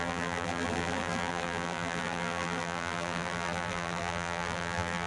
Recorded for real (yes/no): no